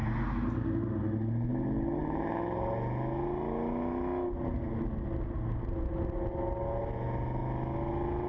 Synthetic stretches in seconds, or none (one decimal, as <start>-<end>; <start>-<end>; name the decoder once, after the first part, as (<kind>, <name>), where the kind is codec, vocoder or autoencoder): none